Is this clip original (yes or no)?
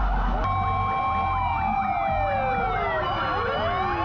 yes